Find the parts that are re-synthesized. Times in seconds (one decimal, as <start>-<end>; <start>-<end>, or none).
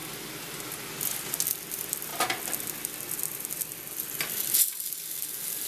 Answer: none